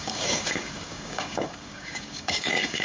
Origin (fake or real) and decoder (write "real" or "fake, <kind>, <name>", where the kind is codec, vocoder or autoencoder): fake, codec, DAC